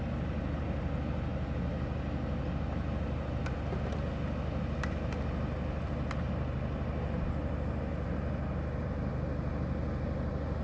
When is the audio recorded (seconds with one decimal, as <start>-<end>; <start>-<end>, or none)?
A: 0.0-10.6